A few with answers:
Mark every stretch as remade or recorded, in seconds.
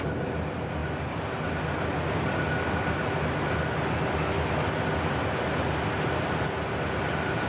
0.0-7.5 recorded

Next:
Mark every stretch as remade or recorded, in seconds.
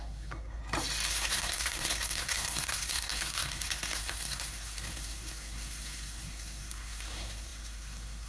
0.0-0.6 remade; 0.6-1.1 recorded; 1.1-8.3 remade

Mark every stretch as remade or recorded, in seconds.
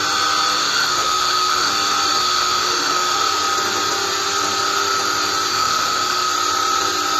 0.0-0.6 recorded; 0.6-1.7 remade; 1.7-2.2 recorded; 2.2-3.2 remade; 3.2-5.5 recorded; 5.5-6.3 remade; 6.3-7.2 recorded